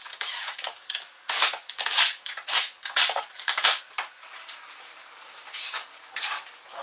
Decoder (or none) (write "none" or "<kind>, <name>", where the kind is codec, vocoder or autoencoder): codec, DAC